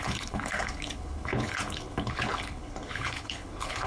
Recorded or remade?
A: remade